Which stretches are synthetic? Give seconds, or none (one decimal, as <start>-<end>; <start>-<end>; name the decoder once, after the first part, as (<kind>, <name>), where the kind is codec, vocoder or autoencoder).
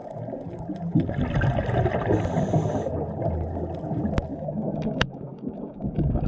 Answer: 4.3-6.3 (codec, DAC)